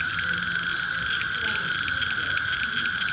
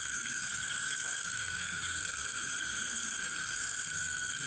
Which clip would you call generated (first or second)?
second